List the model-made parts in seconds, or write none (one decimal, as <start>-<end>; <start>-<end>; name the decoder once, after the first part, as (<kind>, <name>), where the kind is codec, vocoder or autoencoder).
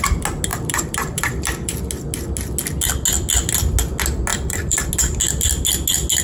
0.5-1.8 (vocoder, BigVGAN v2); 4.3-4.9